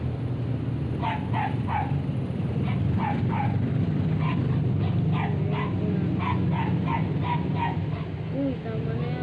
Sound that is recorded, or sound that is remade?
recorded